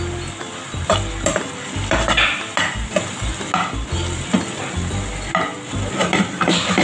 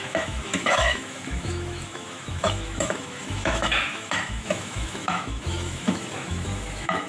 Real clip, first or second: first